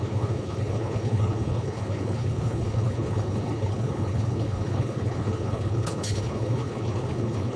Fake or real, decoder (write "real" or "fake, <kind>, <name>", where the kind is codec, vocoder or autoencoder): fake, codec, HILCodec